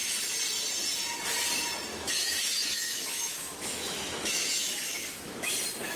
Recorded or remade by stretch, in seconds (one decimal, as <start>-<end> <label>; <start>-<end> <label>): 0.0-1.9 recorded; 1.9-5.5 remade; 5.5-6.0 recorded